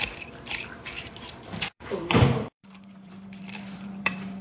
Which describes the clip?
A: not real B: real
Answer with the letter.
A